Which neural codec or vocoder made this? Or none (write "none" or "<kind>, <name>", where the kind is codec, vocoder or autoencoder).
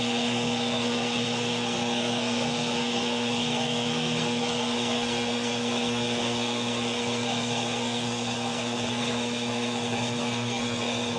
codec, SNAC